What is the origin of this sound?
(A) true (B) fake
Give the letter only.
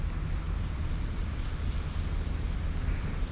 A